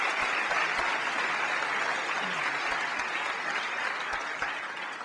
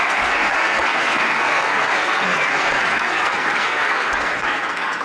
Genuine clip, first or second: first